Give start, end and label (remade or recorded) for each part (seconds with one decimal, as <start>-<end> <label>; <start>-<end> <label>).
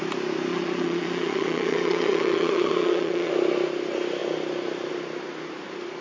0.0-0.5 recorded; 0.5-3.3 remade; 3.3-6.0 recorded